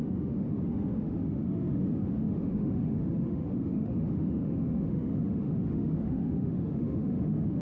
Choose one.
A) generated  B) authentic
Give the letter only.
A